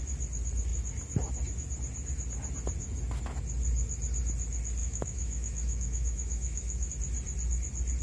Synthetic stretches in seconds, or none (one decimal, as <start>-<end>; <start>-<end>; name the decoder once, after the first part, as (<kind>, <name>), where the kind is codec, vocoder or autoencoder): 4.8-6.9 (autoencoder, DAC-VAE)

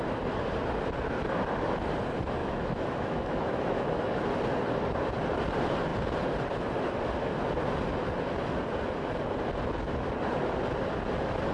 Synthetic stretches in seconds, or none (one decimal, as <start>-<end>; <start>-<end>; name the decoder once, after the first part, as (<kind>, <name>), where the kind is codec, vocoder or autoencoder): 2.4-4.2 (autoencoder, DAC-VAE)